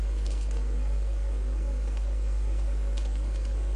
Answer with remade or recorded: remade